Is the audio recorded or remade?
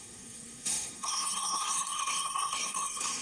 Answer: remade